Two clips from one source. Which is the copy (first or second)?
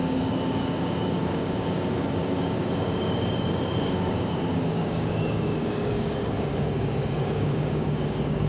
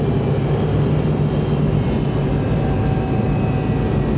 first